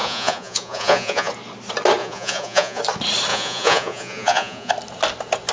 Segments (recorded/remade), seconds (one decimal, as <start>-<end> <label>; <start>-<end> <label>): 0.0-1.3 remade; 1.3-2.0 recorded; 2.0-2.8 remade; 2.8-3.3 recorded; 3.3-4.7 remade; 4.7-5.5 recorded